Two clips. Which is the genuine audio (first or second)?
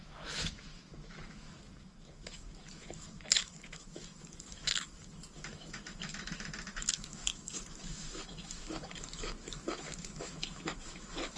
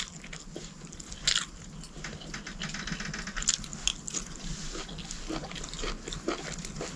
second